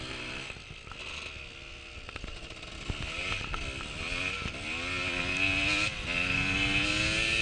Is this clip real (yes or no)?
yes